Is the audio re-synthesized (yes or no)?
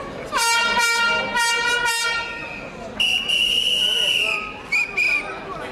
no